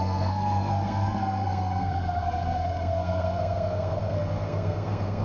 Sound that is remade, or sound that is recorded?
remade